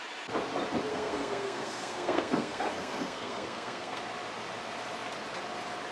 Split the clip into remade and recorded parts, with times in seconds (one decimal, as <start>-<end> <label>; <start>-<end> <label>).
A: 0.0-0.9 recorded; 0.9-4.0 remade; 4.0-5.9 recorded